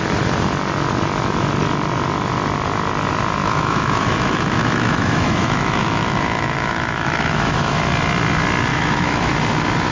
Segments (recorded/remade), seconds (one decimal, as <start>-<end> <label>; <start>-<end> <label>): 0.0-3.4 recorded; 3.4-7.8 remade; 7.8-8.7 recorded; 8.7-9.3 remade; 9.3-9.9 recorded